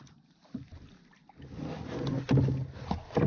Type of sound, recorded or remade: recorded